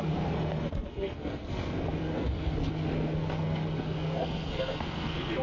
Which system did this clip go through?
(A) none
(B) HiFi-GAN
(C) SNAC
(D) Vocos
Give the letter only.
C